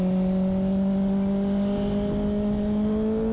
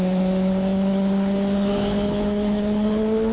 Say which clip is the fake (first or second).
second